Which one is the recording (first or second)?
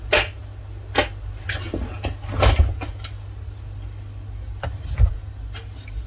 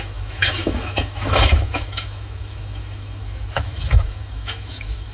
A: first